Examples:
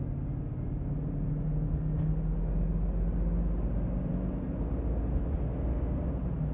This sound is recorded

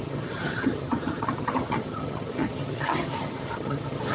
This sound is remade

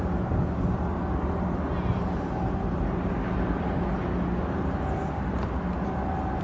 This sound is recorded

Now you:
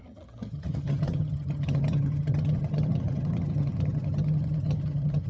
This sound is remade